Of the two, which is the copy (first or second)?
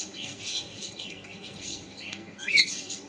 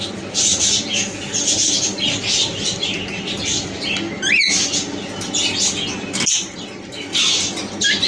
first